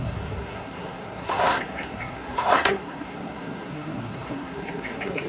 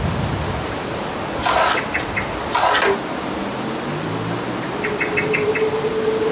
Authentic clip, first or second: second